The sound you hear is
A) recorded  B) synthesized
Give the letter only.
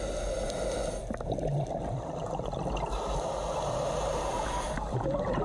A